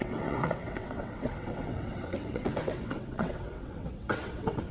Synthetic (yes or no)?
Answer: yes